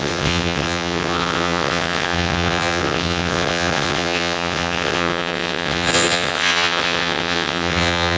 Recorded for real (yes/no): no